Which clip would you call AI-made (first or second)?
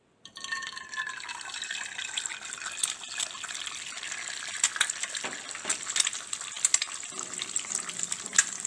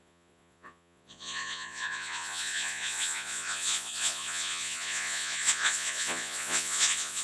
second